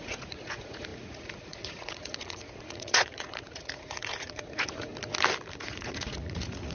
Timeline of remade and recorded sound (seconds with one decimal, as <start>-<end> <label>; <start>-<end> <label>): 0.0-4.9 remade; 4.9-5.6 recorded; 5.6-6.7 remade